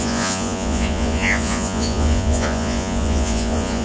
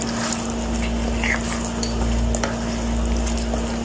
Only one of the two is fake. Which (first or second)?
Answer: first